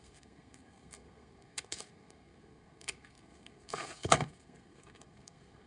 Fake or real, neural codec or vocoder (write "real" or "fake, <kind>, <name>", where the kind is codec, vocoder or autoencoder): fake, codec, SNAC